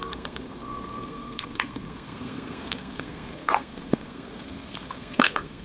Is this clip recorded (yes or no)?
no